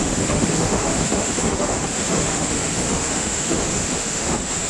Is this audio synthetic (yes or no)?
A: yes